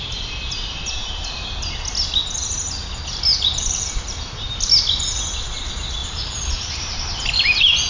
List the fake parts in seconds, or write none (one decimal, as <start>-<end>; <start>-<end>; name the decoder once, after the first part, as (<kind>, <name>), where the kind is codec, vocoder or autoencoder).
3.3-4.7 (vocoder, BigVGAN v2); 6.0-7.9